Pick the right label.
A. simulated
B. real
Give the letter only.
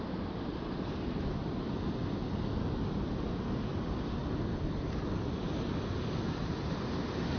B